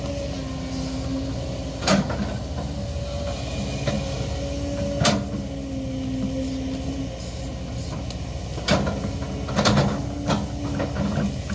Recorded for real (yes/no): yes